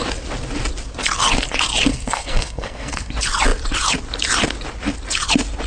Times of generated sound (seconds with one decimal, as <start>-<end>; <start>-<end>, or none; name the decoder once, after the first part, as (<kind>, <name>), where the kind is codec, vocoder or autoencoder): 1.9-3.1 (codec, SNAC)